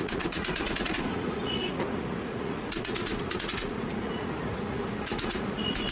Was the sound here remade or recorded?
remade